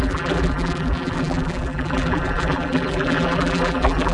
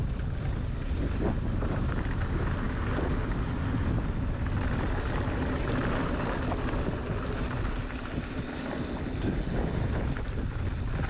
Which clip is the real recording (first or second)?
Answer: second